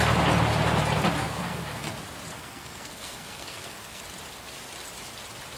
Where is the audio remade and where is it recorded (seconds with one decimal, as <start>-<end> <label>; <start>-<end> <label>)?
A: 0.0-1.2 recorded; 1.2-1.9 remade; 1.9-2.3 recorded; 2.3-4.0 remade; 4.0-5.6 recorded

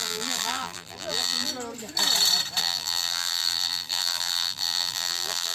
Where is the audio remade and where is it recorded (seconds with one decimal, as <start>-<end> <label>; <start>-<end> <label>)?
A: 0.0-1.5 remade; 1.5-2.6 recorded; 2.6-5.5 remade

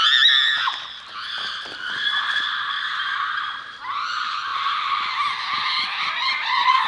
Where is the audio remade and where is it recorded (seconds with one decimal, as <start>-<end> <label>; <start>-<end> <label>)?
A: 0.0-4.1 recorded; 4.1-4.5 remade; 4.5-6.0 recorded; 6.0-6.9 remade

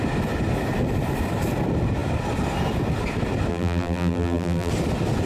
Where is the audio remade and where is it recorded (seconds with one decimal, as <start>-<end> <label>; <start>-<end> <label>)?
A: 0.0-3.5 recorded; 3.5-4.7 remade; 4.7-5.3 recorded

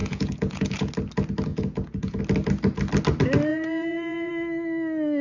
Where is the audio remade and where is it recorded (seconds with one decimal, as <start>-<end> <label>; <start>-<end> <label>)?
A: 0.0-0.9 remade; 0.9-1.5 recorded; 1.5-2.2 remade; 2.2-3.5 recorded; 3.5-4.3 remade; 4.3-5.2 recorded